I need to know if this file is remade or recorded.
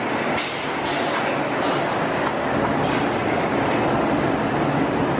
recorded